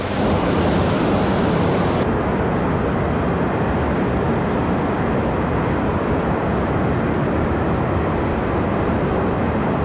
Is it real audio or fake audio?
real